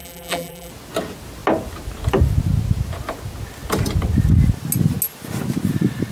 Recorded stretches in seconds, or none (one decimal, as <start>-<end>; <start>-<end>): 0.7-6.1